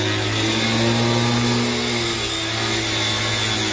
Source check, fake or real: real